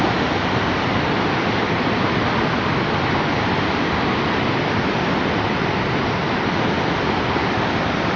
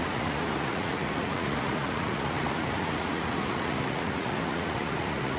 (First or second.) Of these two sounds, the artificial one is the second